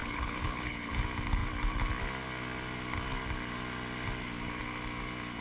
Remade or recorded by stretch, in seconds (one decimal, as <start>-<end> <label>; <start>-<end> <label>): 0.0-0.9 remade; 0.9-5.4 recorded